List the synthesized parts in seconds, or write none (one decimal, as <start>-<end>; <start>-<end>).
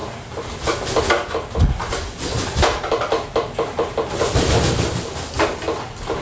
0.0-1.0; 2.1-5.3